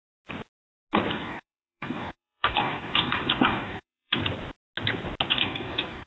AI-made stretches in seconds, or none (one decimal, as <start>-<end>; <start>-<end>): 1.1-4.2; 5.3-6.1